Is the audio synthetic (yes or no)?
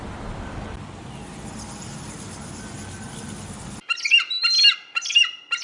no